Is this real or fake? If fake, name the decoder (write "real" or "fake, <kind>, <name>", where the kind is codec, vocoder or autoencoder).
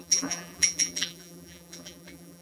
fake, vocoder, BigVGAN v2